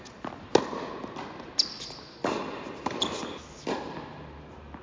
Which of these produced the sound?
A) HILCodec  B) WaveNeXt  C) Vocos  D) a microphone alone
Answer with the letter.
D